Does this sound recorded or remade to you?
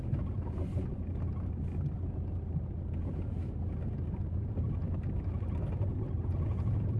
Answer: recorded